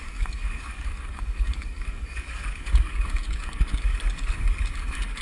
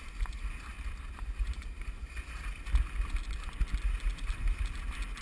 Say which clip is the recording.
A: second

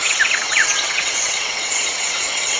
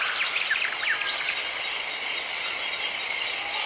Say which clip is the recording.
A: second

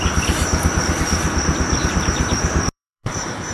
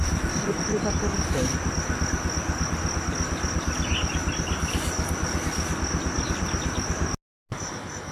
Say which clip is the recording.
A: second